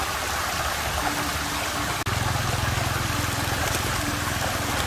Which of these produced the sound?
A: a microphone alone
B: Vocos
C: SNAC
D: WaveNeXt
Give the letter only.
A